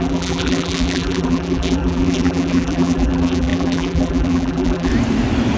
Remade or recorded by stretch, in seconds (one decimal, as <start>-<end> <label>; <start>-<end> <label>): 0.0-4.9 remade; 4.9-5.6 recorded